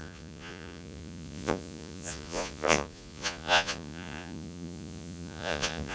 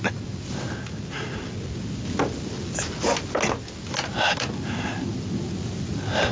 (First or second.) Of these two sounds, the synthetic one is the first